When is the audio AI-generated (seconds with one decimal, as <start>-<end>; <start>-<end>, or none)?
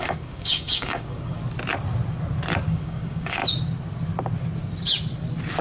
0.0-1.4; 2.7-3.4